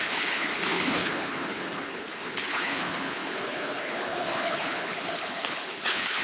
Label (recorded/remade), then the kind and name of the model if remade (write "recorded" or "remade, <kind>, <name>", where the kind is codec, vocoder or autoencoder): remade, codec, HILCodec